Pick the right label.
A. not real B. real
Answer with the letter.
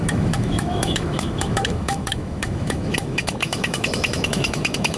A